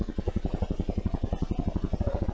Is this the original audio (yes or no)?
yes